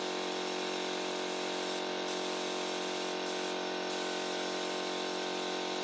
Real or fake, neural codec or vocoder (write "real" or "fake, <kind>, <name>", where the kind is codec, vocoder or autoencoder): real